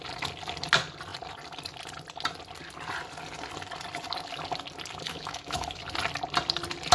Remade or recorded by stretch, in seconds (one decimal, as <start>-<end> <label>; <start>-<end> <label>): 0.0-5.1 recorded; 5.1-5.8 remade; 5.8-6.9 recorded